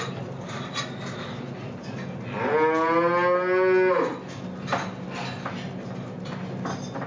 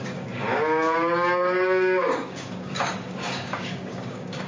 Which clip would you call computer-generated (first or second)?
second